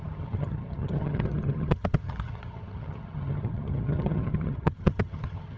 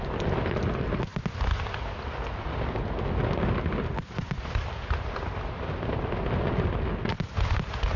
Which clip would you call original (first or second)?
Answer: second